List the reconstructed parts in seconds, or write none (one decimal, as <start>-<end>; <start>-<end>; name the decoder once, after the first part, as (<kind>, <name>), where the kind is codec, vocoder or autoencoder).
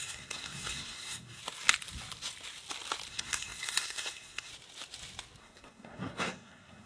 0.0-1.4 (codec, SNAC); 3.1-4.5; 5.4-6.9